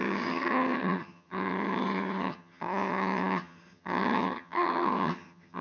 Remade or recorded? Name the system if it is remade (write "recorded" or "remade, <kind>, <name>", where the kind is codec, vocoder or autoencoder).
remade, vocoder, HiFi-GAN